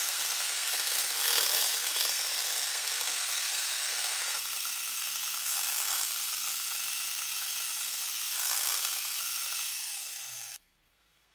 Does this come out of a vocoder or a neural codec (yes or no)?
yes